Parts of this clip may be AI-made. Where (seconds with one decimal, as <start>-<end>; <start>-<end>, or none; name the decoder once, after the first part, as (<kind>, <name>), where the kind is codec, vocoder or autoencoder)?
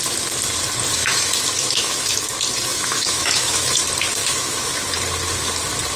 1.0-2.2 (autoencoder, DAC-VAE); 2.7-3.8; 4.2-4.9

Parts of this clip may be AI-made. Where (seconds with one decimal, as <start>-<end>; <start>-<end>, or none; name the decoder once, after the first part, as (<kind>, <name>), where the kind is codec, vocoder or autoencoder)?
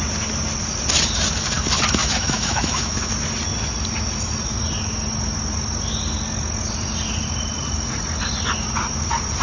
2.0-3.1 (autoencoder, DAC-VAE)